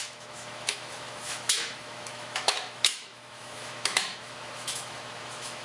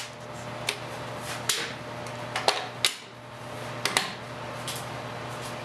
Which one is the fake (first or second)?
first